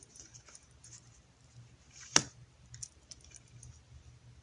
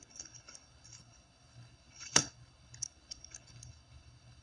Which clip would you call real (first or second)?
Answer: first